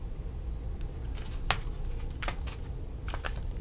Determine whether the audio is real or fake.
real